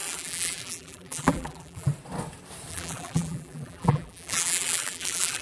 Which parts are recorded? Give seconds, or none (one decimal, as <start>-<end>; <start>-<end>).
1.9-2.7